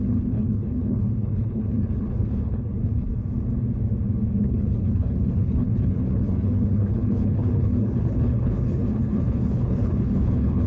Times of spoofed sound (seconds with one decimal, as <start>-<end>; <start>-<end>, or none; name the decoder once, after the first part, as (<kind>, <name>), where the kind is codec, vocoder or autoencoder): 0.0-3.1 (codec, HILCodec); 4.4-10.7